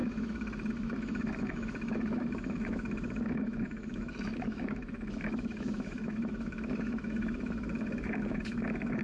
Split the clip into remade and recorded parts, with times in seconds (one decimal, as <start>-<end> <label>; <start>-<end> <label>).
0.0-9.0 remade